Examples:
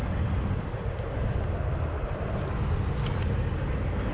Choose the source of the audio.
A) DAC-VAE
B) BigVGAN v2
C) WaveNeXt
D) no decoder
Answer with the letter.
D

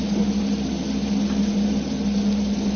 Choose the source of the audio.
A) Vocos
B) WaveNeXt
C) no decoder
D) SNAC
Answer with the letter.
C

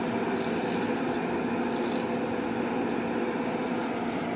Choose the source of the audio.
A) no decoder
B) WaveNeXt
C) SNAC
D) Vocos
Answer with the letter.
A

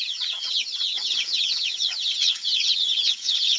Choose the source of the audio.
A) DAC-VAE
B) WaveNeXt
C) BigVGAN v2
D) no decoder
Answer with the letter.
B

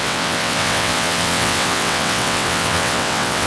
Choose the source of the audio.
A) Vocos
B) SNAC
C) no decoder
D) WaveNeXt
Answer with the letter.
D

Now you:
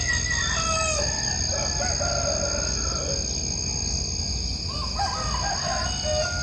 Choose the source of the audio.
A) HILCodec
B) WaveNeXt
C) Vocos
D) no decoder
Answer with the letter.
D